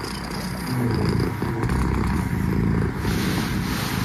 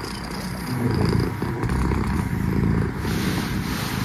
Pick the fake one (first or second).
second